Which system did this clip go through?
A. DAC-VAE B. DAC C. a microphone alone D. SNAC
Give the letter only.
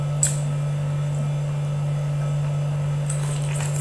C